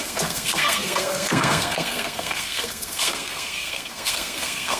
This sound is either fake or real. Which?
fake